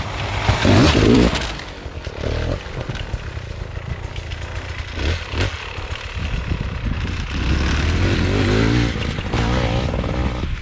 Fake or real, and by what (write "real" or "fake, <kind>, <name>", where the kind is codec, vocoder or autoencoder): real